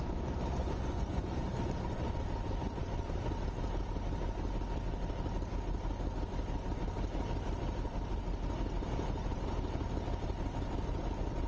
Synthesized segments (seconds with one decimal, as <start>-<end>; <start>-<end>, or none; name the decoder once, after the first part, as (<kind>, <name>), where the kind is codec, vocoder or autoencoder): 0.6-1.3 (vocoder, Vocos)